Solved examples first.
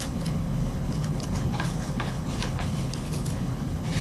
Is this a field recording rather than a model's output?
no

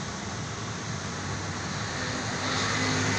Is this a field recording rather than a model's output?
yes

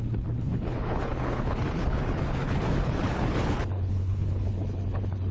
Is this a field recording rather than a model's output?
no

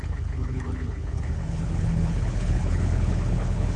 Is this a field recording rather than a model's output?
no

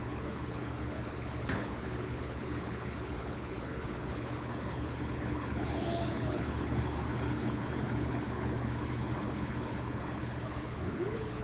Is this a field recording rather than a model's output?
no